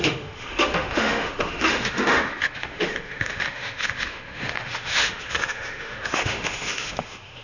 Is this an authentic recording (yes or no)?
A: no